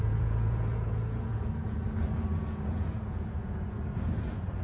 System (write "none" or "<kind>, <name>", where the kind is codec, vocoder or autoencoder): vocoder, Vocos